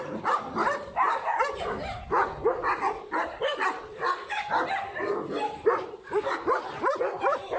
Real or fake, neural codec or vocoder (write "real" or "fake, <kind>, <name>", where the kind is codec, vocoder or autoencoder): real